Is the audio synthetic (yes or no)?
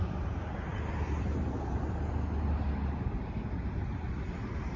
no